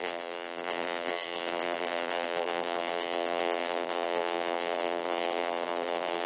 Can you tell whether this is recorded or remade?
remade